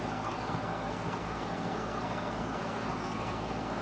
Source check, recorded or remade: remade